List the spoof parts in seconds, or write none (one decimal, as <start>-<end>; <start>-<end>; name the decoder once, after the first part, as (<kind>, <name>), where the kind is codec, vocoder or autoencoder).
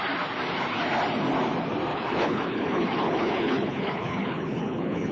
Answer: 1.9-5.1 (codec, HILCodec)